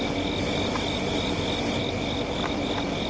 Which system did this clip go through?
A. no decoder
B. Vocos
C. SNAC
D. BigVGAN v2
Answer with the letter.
A